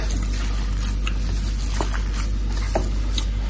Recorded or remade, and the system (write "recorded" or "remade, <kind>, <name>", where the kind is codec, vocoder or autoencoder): recorded